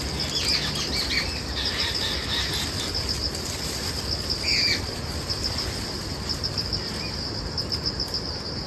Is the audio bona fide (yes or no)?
yes